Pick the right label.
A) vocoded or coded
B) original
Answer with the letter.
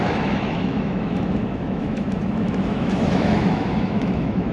A